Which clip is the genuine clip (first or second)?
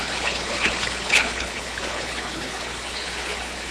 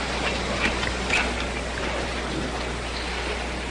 second